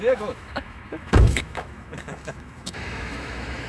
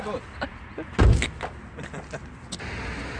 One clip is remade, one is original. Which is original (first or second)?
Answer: second